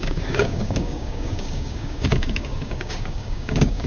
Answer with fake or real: fake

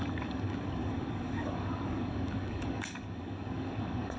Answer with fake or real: fake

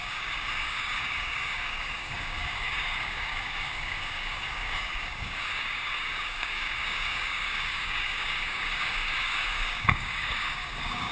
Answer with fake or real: fake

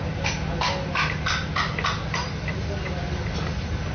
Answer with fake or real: real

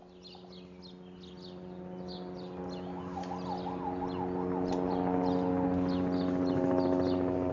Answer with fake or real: real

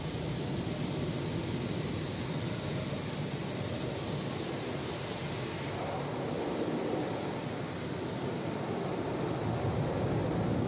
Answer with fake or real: real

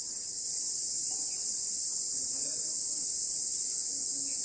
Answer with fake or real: real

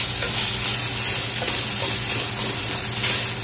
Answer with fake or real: real